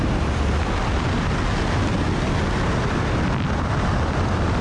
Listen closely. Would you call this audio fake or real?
real